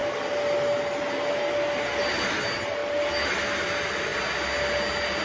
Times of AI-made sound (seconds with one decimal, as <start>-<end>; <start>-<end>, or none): none